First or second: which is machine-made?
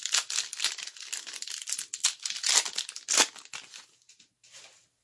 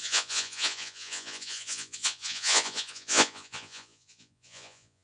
second